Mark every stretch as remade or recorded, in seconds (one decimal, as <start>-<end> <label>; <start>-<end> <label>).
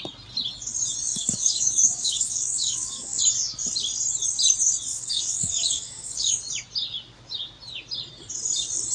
0.0-1.1 recorded; 1.1-3.2 remade; 3.2-4.9 recorded; 4.9-6.4 remade; 6.4-8.9 recorded